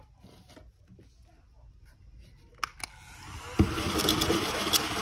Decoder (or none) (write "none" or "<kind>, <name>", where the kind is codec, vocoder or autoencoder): none